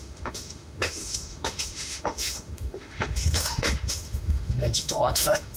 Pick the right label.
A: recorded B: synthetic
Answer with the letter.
B